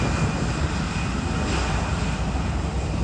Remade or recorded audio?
recorded